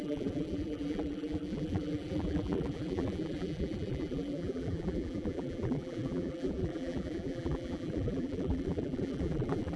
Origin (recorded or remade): remade